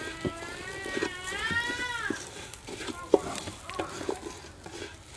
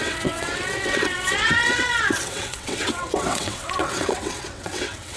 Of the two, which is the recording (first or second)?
first